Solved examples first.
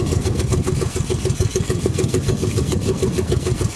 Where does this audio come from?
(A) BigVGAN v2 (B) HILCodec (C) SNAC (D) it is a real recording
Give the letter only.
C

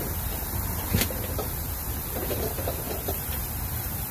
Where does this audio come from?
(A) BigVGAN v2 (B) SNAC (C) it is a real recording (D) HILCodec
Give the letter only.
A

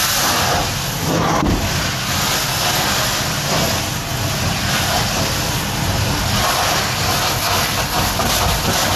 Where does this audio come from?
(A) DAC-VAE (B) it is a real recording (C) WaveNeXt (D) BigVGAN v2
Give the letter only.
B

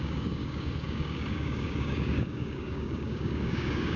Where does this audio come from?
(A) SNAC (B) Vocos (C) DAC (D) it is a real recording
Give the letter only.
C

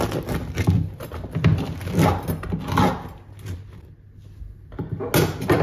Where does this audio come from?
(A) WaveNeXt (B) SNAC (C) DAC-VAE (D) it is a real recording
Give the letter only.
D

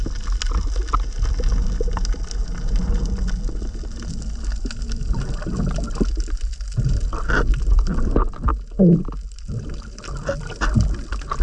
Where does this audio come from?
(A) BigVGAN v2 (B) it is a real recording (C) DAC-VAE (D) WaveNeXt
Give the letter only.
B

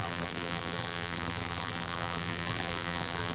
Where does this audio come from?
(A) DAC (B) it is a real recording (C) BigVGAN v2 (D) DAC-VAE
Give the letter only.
C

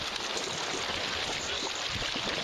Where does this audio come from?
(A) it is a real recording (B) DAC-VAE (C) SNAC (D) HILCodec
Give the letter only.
A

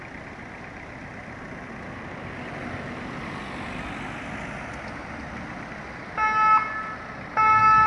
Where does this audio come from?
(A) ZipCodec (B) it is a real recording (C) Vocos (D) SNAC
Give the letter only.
B